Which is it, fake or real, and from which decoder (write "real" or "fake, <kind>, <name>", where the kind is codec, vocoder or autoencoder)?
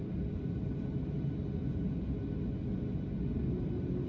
real